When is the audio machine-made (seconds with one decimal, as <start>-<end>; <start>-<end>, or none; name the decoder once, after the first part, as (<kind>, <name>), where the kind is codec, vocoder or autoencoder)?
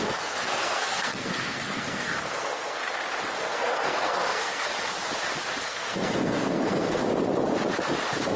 0.0-2.8 (codec, SNAC); 3.4-4.7; 5.6-7.0